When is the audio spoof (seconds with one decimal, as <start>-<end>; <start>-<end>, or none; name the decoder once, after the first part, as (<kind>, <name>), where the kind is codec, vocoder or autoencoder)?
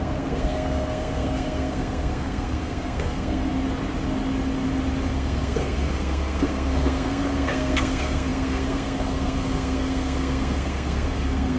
0.0-3.5 (codec, SNAC); 5.1-11.6